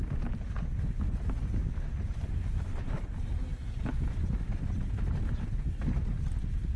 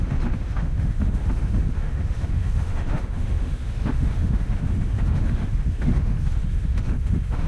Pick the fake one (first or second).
second